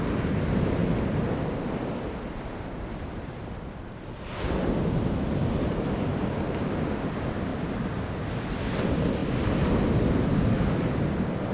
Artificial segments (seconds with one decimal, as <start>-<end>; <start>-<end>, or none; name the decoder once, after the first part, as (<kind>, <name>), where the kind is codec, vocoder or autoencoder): none